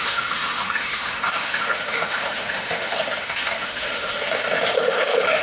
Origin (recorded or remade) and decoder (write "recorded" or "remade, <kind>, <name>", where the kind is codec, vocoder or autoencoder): remade, autoencoder, DAC-VAE